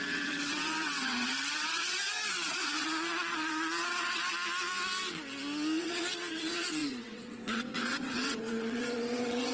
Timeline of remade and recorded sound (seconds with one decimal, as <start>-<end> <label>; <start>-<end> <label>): 0.0-4.3 remade; 4.3-5.8 recorded; 5.8-9.5 remade